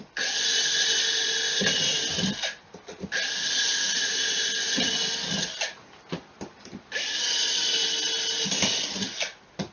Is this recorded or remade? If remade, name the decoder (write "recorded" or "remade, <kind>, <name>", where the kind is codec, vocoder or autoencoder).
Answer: recorded